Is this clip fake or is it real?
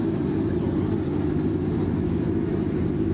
real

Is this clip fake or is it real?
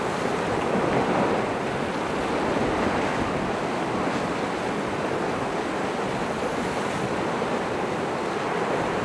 real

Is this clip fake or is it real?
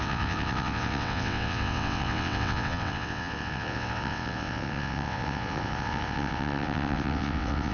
fake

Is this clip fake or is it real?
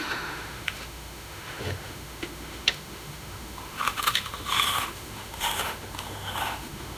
fake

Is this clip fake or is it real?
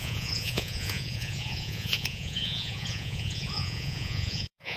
fake